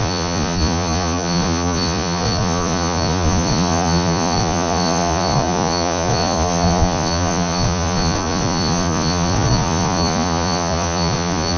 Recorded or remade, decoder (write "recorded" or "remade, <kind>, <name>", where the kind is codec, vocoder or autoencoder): remade, vocoder, Vocos